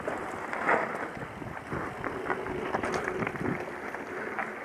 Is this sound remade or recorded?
recorded